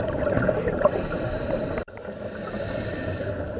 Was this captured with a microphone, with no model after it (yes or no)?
yes